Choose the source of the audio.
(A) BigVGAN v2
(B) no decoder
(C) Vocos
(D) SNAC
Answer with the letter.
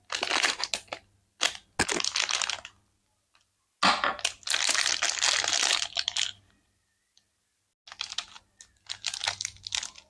B